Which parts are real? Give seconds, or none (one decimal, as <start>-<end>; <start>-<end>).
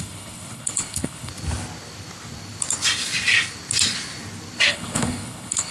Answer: 1.3-4.7